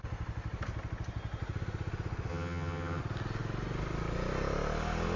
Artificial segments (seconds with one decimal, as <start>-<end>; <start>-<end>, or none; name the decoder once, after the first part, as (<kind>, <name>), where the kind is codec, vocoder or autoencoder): 2.3-3.0 (vocoder, HiFi-GAN)